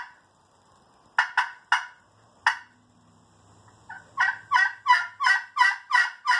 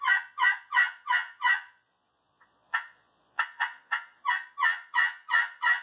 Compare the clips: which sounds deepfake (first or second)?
second